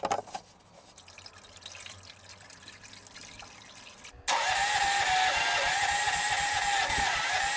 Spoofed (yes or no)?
no